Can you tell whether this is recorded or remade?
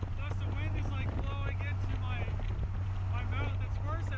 recorded